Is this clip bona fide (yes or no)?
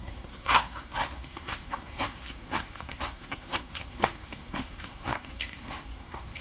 no